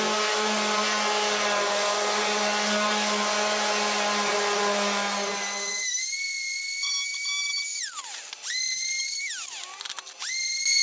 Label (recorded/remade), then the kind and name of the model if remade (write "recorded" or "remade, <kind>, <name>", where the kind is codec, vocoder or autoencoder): recorded